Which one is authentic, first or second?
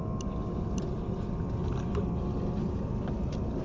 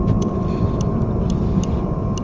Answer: first